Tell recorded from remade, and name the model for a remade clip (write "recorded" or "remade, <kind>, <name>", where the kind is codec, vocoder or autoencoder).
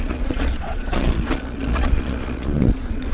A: remade, vocoder, Vocos